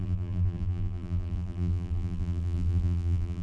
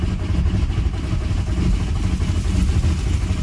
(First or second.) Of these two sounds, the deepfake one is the first